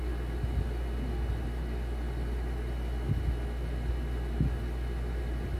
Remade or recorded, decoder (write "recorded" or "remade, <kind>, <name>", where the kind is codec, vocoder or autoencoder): recorded